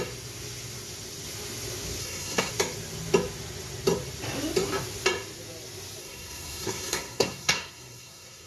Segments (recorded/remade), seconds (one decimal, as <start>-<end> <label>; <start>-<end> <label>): 0.0-2.0 recorded; 2.0-2.5 remade; 2.5-6.0 recorded; 6.0-8.5 remade